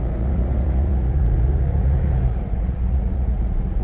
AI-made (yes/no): yes